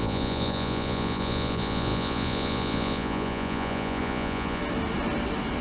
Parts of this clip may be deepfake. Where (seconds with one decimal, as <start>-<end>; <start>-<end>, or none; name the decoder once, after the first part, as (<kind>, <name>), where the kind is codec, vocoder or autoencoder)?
0.0-4.6 (vocoder, Vocos)